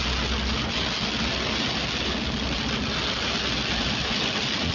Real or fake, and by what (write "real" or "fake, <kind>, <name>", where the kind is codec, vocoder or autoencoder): real